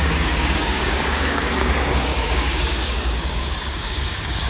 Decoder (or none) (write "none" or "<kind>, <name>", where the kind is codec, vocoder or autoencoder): codec, DAC